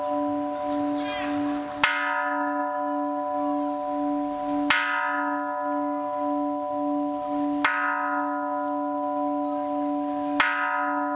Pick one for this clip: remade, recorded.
recorded